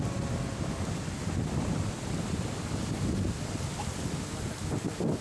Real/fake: real